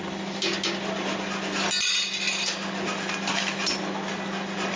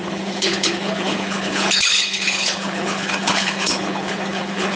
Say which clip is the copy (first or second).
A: second